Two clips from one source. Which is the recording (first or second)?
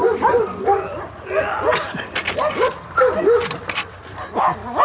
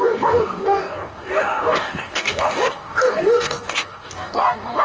first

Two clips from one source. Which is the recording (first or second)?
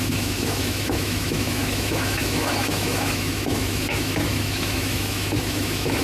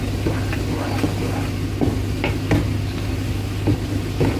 second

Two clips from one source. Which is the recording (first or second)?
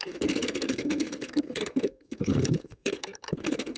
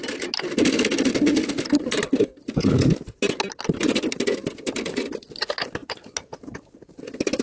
second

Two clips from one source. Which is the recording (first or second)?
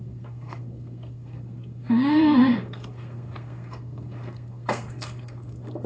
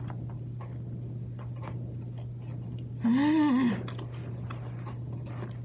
second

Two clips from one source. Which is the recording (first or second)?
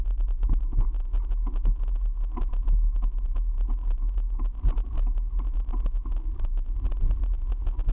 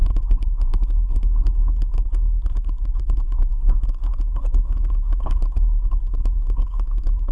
first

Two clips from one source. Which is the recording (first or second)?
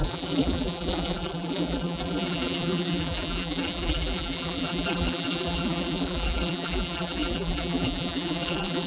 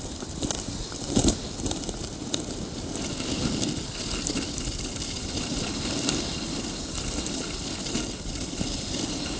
second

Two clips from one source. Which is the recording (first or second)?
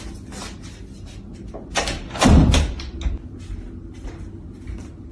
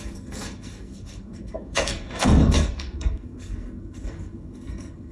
first